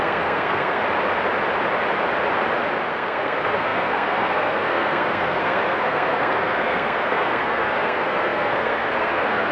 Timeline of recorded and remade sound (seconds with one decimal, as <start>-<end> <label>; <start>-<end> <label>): 0.0-0.8 remade; 0.8-2.9 recorded; 2.9-9.5 remade